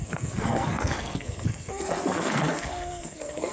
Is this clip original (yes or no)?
no